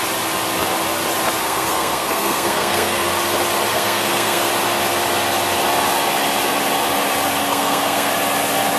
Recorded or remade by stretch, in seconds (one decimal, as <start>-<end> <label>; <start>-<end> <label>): 0.0-1.4 recorded; 1.4-3.1 remade; 3.1-3.7 recorded; 3.7-4.5 remade; 4.5-7.4 recorded; 7.4-8.1 remade; 8.1-8.8 recorded